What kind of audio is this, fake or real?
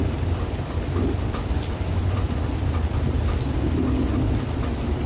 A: real